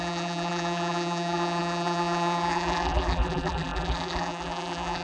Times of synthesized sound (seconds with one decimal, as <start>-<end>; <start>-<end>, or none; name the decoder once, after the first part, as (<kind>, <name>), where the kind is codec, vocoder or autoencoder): 0.0-5.0 (vocoder, BigVGAN v2)